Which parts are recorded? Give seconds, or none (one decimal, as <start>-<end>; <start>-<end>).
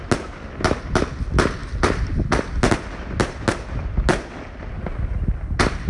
0.0-5.9